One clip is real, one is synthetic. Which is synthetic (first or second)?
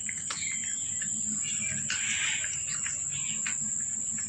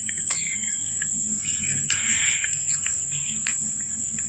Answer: second